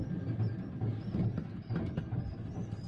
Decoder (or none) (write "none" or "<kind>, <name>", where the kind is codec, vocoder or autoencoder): none